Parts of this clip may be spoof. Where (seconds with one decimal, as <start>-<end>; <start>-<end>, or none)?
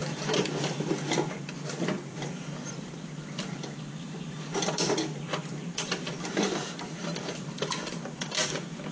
0.0-8.9